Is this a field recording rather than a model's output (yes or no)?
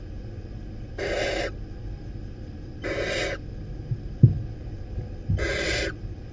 yes